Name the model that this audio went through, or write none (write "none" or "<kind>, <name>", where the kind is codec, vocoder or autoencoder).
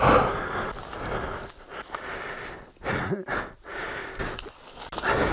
none